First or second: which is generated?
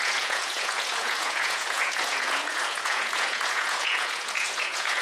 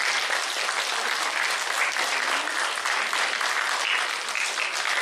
first